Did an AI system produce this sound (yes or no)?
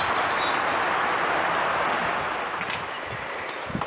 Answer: no